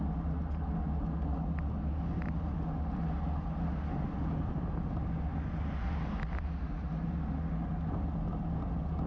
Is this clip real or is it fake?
real